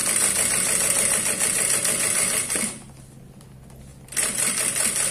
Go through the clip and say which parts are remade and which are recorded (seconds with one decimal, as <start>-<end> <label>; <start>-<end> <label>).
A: 0.0-3.9 recorded; 3.9-4.6 remade; 4.6-5.1 recorded